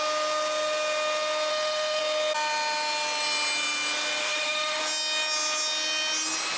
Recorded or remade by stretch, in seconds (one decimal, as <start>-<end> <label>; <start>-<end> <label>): 0.0-1.5 recorded; 1.5-2.0 remade; 2.0-4.2 recorded; 4.2-4.8 remade; 4.8-6.6 recorded